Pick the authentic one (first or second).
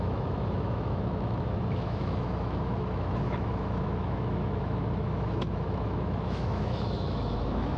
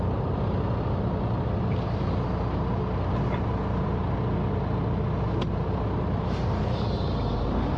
second